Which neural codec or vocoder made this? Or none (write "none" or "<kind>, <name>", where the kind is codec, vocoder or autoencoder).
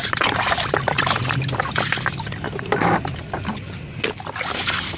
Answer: none